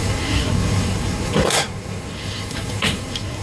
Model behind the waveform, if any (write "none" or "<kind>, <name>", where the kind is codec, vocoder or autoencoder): codec, SNAC